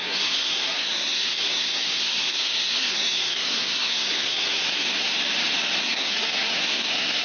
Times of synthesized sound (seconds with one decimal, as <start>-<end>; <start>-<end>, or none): 0.0-5.1; 5.8-7.2